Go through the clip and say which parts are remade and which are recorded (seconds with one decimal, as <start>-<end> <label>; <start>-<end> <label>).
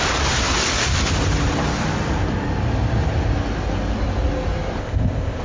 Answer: 0.0-4.8 recorded; 4.8-5.4 remade